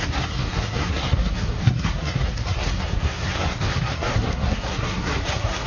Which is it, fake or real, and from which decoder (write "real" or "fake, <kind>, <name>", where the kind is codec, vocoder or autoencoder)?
fake, codec, SNAC